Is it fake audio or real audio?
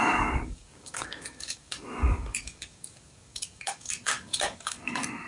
fake